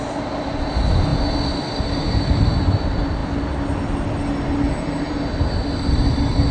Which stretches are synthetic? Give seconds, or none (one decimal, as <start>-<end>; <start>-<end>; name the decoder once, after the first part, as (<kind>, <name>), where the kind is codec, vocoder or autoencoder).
none